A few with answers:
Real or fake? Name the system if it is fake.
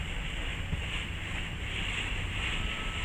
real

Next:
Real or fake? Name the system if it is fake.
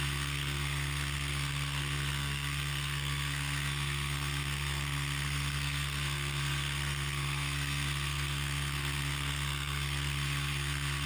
fake, codec, SNAC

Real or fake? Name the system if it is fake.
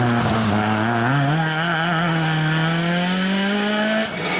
real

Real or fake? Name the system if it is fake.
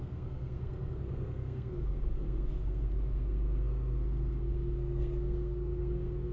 fake, codec, SNAC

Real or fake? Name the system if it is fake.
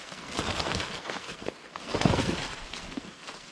fake, codec, SNAC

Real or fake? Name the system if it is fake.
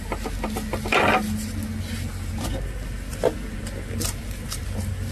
real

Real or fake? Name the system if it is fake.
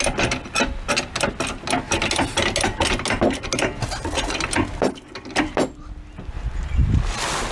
real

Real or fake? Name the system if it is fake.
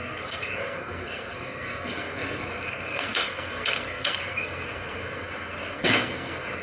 fake, codec, SNAC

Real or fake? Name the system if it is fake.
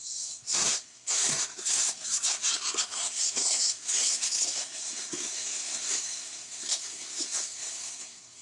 fake, codec, SNAC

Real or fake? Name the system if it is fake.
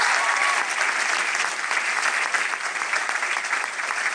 real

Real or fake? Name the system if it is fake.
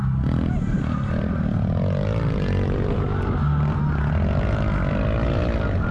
real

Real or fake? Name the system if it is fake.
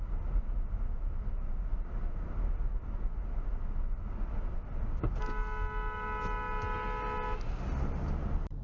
real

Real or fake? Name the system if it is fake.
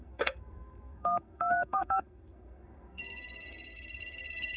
fake, codec, SNAC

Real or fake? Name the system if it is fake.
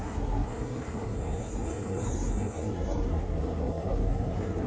fake, codec, SNAC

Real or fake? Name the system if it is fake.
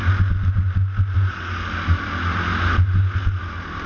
real